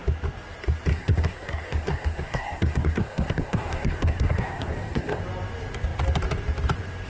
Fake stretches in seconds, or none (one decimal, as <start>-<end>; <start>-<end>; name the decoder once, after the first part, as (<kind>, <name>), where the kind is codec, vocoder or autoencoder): 0.9-5.2 (codec, SNAC)